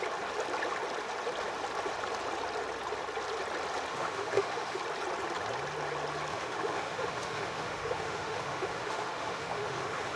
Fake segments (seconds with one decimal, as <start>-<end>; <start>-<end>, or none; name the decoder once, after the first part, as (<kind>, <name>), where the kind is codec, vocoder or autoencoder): 3.9-4.8 (autoencoder, DAC-VAE); 6.3-10.2